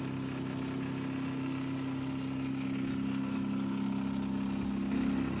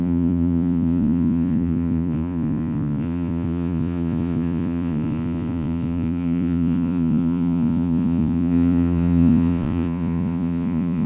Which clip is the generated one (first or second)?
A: second